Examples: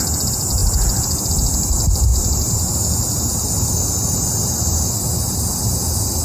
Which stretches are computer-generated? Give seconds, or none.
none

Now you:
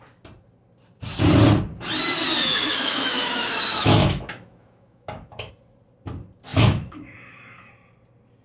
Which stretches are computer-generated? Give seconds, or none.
2.4-5.5 (autoencoder, DAC-VAE); 6.5-7.7

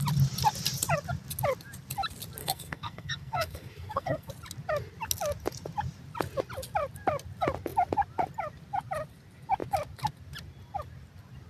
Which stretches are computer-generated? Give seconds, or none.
2.4-4.3 (codec, SNAC)